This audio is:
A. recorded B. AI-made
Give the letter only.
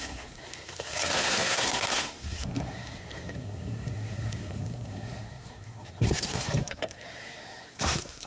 B